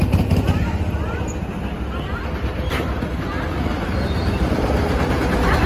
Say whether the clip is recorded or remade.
recorded